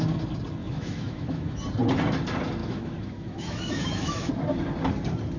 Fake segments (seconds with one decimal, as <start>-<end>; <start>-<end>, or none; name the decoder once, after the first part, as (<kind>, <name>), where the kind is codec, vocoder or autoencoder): 0.6-1.6 (autoencoder, DAC-VAE); 2.6-4.3